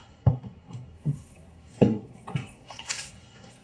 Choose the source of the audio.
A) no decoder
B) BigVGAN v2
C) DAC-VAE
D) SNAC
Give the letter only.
D